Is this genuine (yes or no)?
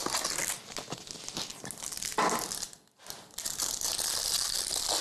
yes